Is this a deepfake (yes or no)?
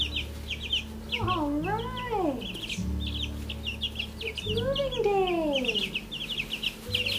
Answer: no